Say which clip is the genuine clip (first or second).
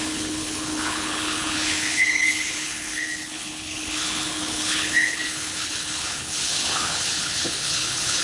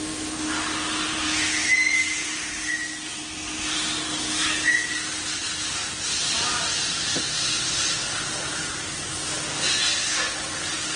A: second